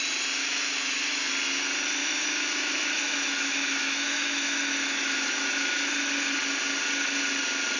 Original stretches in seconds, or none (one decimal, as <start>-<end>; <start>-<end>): 0.0-0.4; 1.3-2.0; 5.9-7.8